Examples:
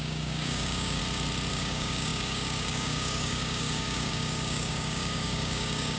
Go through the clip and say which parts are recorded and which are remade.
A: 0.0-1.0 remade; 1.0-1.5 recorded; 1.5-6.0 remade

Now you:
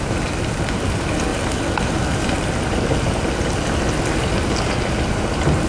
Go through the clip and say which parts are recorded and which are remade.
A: 0.0-5.7 recorded

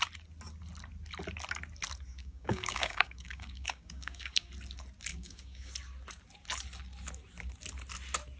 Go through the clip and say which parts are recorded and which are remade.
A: 0.0-2.1 recorded; 2.1-4.5 remade; 4.5-5.1 recorded; 5.1-5.7 remade; 5.7-8.4 recorded

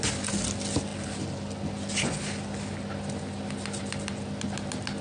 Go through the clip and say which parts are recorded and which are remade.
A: 0.0-5.0 recorded

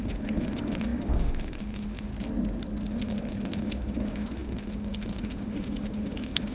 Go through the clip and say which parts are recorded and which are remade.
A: 0.0-2.1 remade; 2.1-2.9 recorded; 2.9-6.5 remade

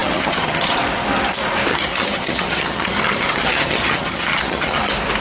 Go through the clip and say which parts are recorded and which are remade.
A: 0.0-0.8 remade; 0.8-1.7 recorded; 1.7-4.8 remade; 4.8-5.2 recorded

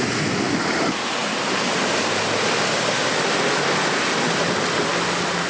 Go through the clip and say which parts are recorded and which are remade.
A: 0.0-5.5 recorded